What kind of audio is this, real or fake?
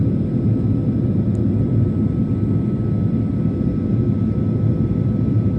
real